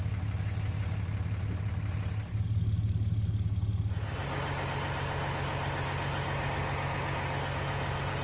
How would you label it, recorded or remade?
recorded